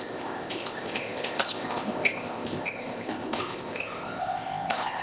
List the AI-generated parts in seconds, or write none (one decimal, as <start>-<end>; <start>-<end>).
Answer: 0.0-5.0